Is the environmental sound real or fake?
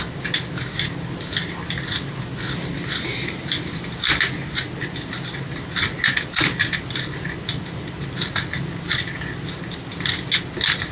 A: real